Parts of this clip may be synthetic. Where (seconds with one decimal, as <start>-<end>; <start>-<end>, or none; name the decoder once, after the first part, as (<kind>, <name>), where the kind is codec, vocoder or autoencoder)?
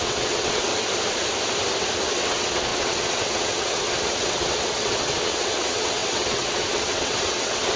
0.0-0.7 (vocoder, WaveNeXt); 2.1-7.8